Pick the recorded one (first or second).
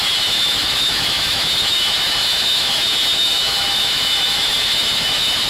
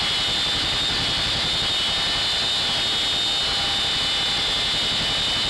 second